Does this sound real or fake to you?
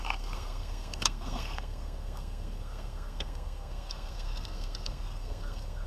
fake